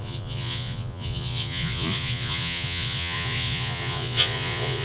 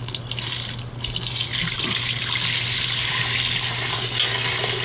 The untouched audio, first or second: second